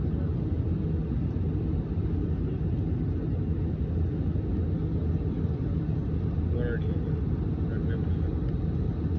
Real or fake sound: real